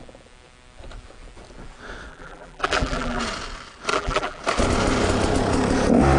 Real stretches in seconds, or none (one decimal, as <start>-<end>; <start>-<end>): 0.0-2.1; 3.2-3.9; 4.4-6.2